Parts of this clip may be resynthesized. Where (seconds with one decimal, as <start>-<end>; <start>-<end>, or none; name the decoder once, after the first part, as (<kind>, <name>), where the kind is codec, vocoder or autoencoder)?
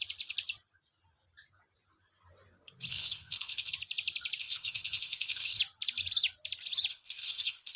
2.9-3.7 (codec, ZipCodec); 4.4-5.6; 6.9-7.8